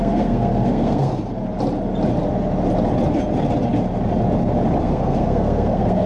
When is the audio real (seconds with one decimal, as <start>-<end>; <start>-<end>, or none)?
1.1-4.8